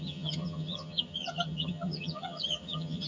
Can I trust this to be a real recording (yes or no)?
no